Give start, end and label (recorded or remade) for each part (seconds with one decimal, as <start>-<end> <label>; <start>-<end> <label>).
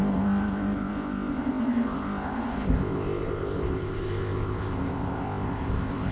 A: 0.0-6.1 remade